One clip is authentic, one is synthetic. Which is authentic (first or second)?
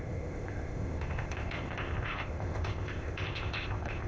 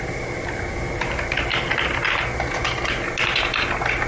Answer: second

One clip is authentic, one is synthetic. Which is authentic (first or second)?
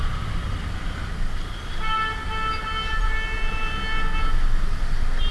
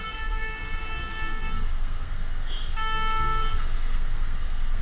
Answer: first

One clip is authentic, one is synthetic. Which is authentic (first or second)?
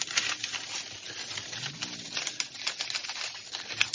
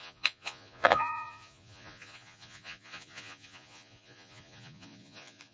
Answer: first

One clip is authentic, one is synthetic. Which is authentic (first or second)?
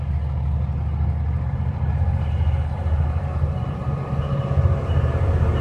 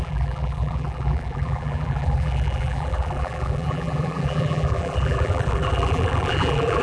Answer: first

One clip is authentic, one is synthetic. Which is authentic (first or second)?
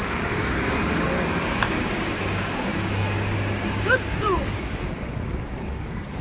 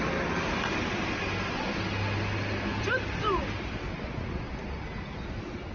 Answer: second